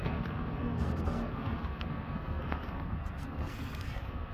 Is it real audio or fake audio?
fake